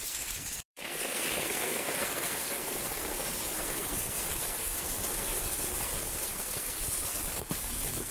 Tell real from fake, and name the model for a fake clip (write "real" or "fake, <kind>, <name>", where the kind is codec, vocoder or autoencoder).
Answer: fake, codec, SNAC